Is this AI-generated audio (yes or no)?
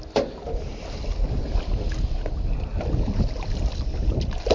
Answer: no